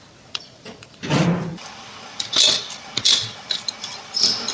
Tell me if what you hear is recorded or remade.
remade